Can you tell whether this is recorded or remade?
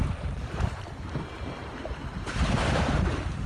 remade